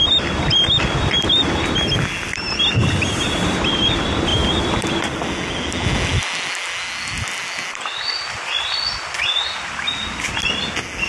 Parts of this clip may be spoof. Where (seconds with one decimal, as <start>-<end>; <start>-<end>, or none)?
none